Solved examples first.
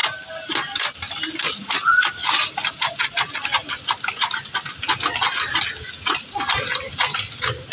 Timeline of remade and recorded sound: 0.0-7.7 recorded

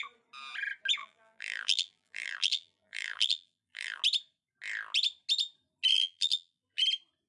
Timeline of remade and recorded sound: 0.0-1.0 recorded; 1.0-4.0 remade; 4.0-5.9 recorded; 5.9-6.8 remade; 6.8-7.3 recorded

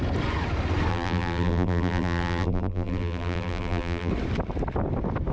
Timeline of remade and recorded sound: 0.0-0.9 recorded; 0.9-4.1 remade; 4.1-5.3 recorded

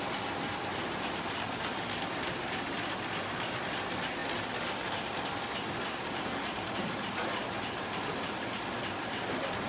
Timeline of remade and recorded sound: 0.0-0.7 recorded; 0.7-1.4 remade; 1.4-9.7 recorded

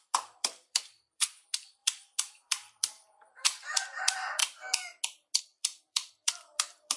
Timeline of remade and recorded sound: 0.0-4.4 remade; 4.4-5.4 recorded; 5.4-7.0 remade